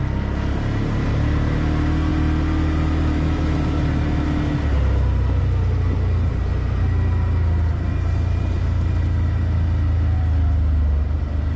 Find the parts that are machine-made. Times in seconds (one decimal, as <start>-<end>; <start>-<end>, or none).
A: none